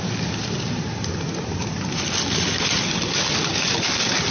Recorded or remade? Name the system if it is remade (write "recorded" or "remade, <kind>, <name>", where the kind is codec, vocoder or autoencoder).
recorded